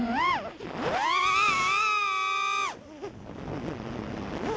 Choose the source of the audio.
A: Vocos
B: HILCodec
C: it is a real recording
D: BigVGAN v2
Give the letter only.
C